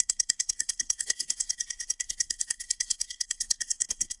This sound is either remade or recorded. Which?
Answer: remade